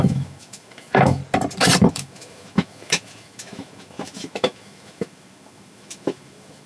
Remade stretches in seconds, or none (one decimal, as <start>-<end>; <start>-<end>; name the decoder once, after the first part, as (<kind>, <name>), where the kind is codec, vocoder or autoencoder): 0.0-1.2 (autoencoder, DAC-VAE); 1.9-6.7